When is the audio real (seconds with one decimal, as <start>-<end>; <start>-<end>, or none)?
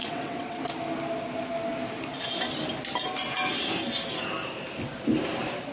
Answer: 0.6-5.7